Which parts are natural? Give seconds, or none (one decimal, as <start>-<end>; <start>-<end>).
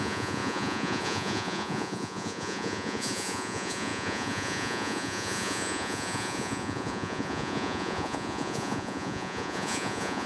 none